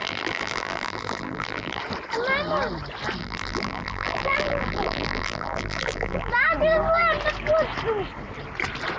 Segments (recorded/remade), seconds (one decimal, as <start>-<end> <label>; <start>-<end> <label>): 0.0-1.8 remade; 1.8-3.2 recorded; 3.2-6.3 remade; 6.3-9.0 recorded